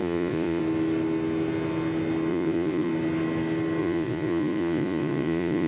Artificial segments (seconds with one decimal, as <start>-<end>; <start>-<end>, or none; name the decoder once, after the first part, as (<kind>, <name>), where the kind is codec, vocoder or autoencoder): 0.0-0.6 (vocoder, Vocos); 2.3-2.9; 3.8-5.7